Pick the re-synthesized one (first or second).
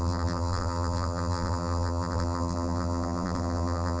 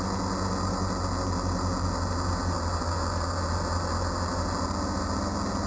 first